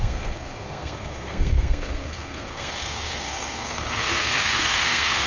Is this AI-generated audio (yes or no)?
yes